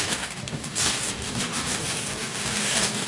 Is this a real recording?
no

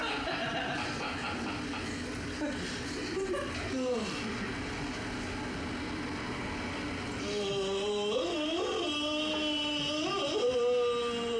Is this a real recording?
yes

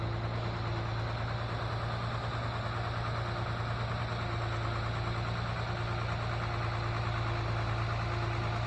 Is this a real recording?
yes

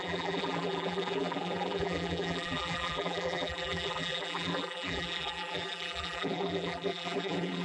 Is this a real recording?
no